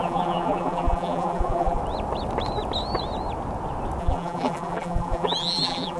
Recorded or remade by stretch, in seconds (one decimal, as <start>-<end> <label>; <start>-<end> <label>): 0.0-1.8 remade; 1.8-4.0 recorded; 4.0-6.0 remade